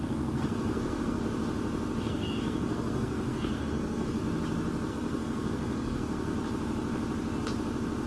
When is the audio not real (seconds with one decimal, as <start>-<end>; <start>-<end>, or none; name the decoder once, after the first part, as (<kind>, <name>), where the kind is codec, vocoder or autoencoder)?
0.0-1.2 (codec, SNAC); 2.0-4.2; 4.9-6.3